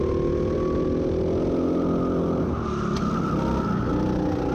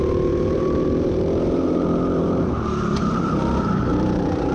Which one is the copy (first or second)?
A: second